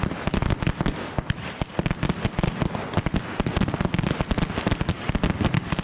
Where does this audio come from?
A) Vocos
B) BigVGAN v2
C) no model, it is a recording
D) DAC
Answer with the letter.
C